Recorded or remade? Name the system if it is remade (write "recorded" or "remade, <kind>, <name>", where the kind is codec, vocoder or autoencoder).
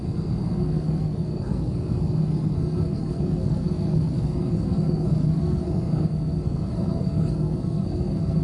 remade, codec, SNAC